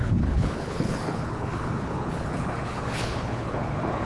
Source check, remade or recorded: remade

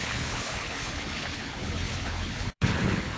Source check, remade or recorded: remade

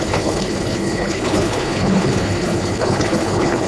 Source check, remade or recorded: remade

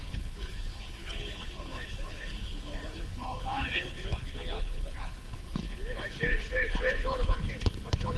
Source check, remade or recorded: remade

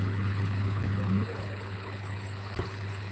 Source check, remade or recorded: remade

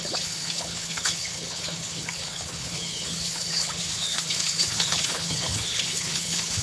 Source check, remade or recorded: remade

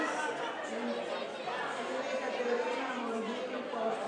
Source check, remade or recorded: recorded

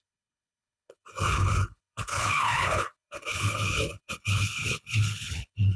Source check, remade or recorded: remade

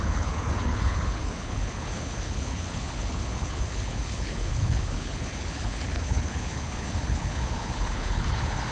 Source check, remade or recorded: remade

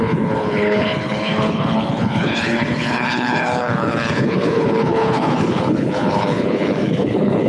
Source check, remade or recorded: remade